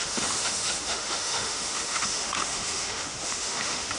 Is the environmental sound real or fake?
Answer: fake